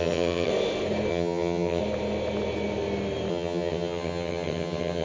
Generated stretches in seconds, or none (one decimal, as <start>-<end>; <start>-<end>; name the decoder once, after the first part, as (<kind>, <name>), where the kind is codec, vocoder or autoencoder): 0.0-0.5 (vocoder, HiFi-GAN); 1.1-1.8; 3.3-5.0